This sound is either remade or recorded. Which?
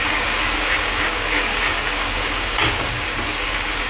remade